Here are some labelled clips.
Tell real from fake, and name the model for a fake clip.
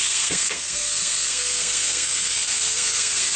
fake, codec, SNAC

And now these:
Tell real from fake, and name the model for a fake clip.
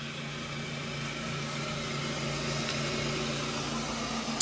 real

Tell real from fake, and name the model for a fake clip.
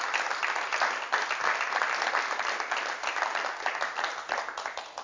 real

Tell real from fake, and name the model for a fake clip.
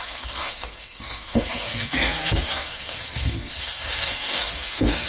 fake, codec, SNAC